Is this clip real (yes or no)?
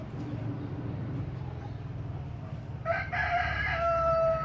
no